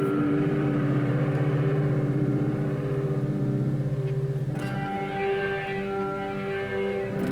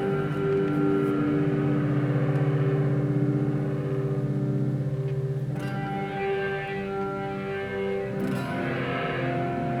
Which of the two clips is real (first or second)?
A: second